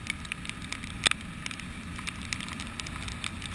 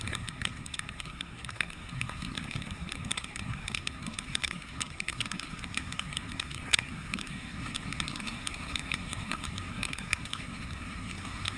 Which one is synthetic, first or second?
second